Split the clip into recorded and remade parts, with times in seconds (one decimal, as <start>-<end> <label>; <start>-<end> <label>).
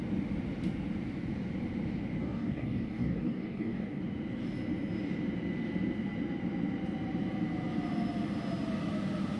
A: 0.0-2.2 recorded; 2.2-4.0 remade; 4.0-9.4 recorded